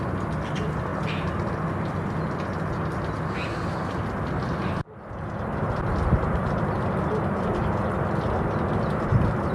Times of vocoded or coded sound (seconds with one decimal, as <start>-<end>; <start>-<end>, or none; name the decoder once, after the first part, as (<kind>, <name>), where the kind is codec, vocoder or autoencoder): none